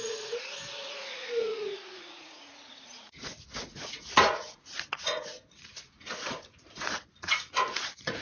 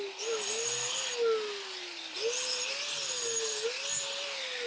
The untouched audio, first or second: second